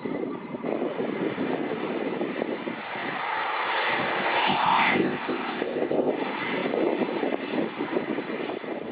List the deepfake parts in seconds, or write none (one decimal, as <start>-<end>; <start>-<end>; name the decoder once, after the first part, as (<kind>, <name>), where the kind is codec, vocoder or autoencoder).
4.4-6.1 (codec, ZipCodec)